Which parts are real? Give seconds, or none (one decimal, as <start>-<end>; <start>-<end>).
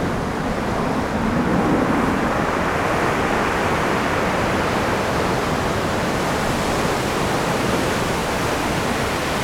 0.0-8.2; 8.7-9.4